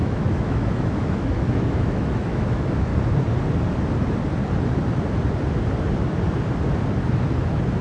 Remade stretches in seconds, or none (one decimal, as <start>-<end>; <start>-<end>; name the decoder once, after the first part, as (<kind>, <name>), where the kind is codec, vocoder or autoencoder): 0.0-2.9 (autoencoder, DAC-VAE)